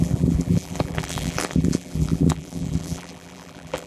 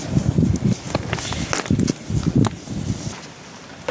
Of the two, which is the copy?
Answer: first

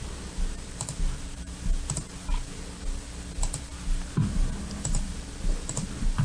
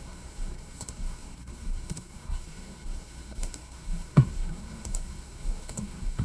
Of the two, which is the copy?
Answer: second